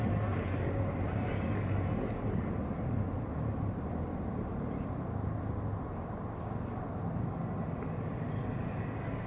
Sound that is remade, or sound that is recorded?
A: recorded